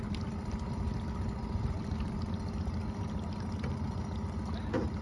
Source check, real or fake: real